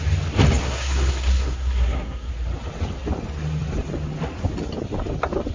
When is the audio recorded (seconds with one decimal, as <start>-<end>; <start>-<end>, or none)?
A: 0.0-0.6; 2.3-5.5